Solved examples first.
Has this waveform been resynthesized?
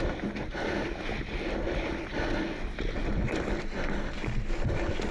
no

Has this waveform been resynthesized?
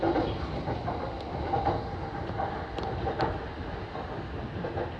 no